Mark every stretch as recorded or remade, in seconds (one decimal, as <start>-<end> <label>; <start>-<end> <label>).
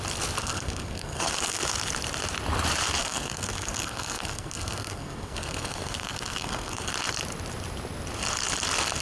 0.0-0.4 recorded; 0.4-1.6 remade; 1.6-3.0 recorded; 3.0-6.9 remade; 6.9-9.0 recorded